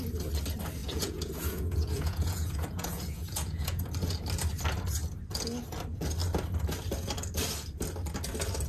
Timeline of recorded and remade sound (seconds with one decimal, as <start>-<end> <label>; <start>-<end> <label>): 0.0-0.8 recorded; 0.8-3.9 remade; 3.9-8.7 recorded